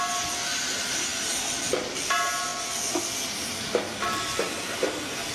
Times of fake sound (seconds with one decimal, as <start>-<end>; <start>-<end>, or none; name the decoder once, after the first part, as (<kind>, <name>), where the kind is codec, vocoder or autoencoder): none